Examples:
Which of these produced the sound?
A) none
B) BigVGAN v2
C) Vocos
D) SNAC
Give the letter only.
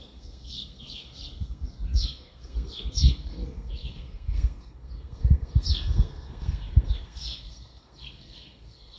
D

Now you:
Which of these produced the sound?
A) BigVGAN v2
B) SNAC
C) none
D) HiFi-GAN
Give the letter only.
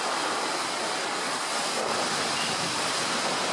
C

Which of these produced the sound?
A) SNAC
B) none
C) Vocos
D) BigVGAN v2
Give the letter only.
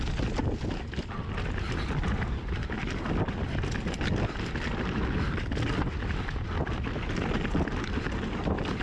B